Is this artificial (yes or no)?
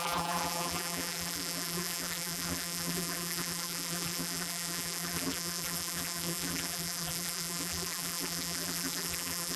yes